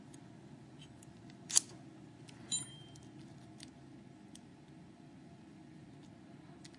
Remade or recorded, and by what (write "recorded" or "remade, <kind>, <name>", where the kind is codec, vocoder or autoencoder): remade, vocoder, BigVGAN v2